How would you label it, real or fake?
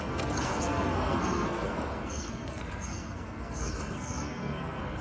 fake